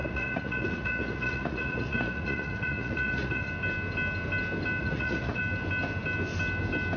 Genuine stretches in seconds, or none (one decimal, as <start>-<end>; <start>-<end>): 3.5-4.8; 5.4-7.0